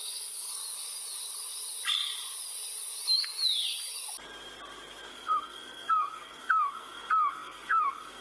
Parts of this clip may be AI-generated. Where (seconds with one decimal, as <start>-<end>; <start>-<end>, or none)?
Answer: 0.0-0.6; 5.1-8.2